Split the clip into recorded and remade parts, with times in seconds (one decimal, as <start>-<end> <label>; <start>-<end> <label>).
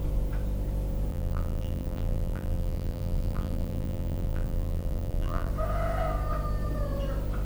0.0-1.1 recorded; 1.1-5.5 remade; 5.5-7.4 recorded